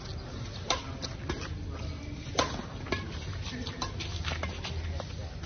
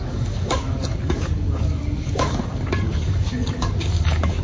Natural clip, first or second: first